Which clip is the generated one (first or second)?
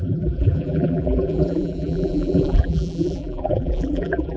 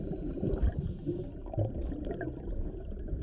first